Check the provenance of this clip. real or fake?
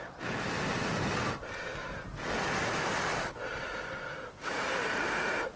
real